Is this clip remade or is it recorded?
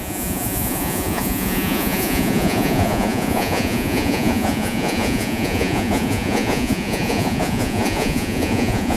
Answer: remade